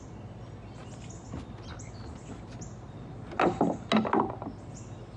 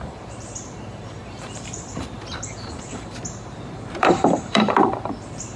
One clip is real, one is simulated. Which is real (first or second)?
first